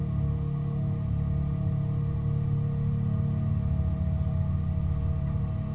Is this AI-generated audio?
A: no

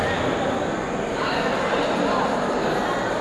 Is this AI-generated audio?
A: no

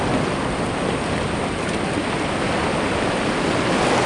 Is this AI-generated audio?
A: no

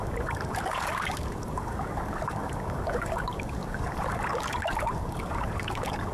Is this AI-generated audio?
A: yes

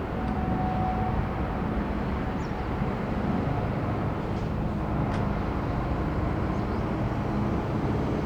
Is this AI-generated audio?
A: no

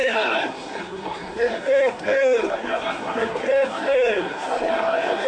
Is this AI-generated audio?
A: yes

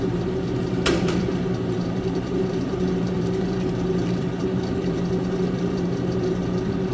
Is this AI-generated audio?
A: yes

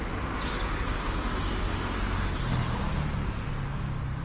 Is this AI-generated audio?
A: no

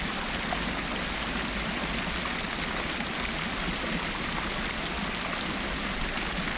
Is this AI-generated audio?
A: no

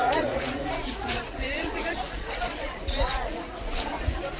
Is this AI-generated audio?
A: yes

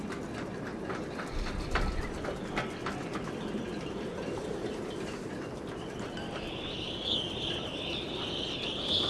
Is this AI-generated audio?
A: no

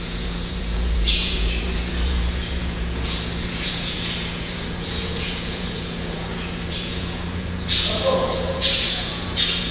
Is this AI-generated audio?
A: yes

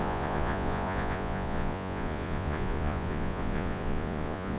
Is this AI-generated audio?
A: yes